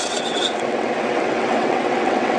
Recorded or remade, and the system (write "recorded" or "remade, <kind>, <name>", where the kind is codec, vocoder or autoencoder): remade, vocoder, WaveNeXt